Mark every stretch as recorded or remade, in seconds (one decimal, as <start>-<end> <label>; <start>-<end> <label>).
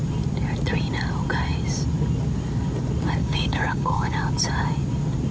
0.0-3.2 recorded; 3.2-4.2 remade; 4.2-5.3 recorded